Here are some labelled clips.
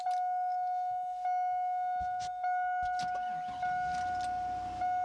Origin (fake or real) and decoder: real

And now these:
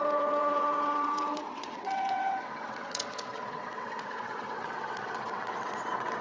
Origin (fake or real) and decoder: fake, vocoder, WaveNeXt